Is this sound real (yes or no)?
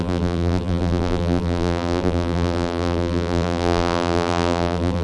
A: no